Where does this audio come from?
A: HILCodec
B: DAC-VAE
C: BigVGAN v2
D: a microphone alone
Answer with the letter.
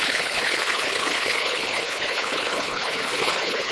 A